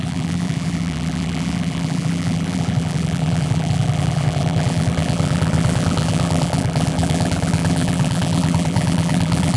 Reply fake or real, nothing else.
fake